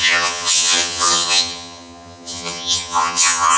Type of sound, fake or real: fake